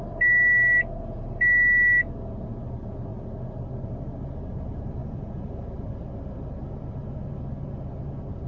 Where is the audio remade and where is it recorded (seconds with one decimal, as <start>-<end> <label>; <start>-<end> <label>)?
0.0-5.0 recorded; 5.0-5.5 remade; 5.5-8.5 recorded